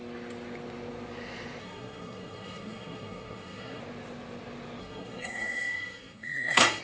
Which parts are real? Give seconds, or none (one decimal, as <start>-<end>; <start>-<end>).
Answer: 0.0-1.6; 3.8-4.8